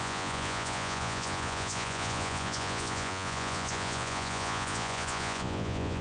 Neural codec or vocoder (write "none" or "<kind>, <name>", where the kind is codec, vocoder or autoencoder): vocoder, Vocos